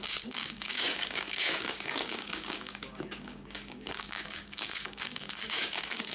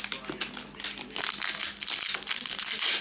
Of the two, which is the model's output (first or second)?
first